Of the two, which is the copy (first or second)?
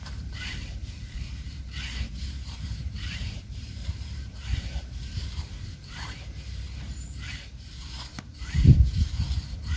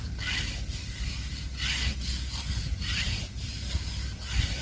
first